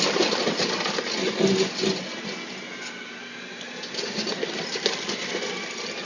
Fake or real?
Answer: real